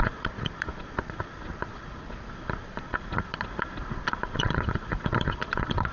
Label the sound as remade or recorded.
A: remade